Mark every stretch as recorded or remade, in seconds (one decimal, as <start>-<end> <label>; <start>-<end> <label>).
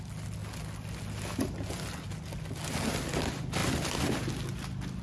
0.0-5.0 recorded